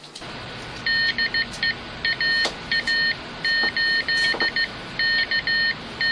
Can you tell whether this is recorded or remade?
recorded